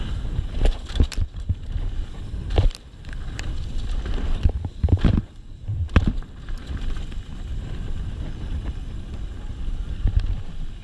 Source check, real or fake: fake